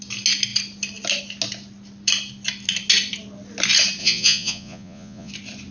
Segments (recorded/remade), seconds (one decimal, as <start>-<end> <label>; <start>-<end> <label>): 0.0-4.0 recorded; 4.0-5.3 remade; 5.3-5.7 recorded